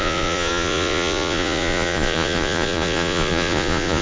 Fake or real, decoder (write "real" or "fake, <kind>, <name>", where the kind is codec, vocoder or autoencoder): fake, vocoder, Vocos